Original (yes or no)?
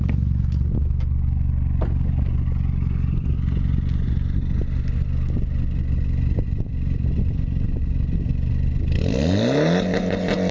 yes